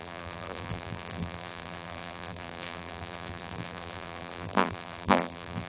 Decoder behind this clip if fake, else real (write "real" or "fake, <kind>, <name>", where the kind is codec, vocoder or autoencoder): fake, vocoder, BigVGAN v2